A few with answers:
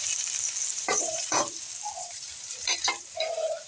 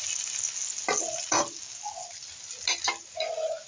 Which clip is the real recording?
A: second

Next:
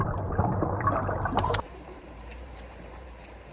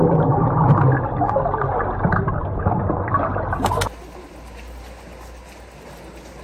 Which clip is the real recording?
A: second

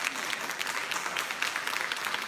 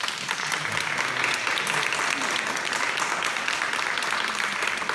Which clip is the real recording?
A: second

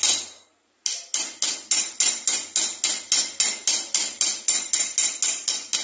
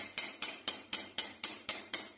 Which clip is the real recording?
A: first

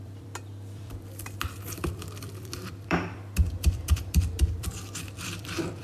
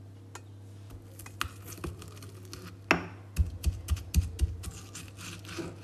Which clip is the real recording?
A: second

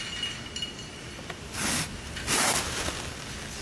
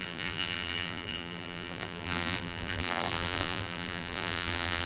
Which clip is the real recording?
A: first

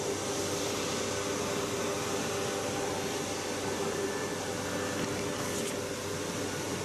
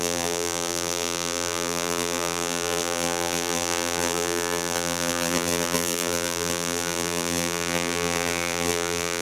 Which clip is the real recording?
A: first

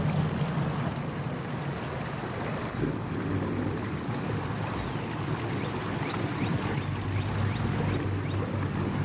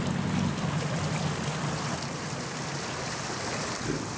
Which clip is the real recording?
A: first